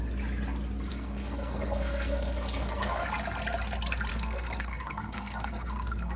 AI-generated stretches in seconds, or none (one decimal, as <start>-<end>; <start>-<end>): 0.9-3.0; 4.1-6.2